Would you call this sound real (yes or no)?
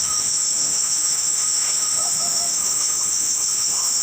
no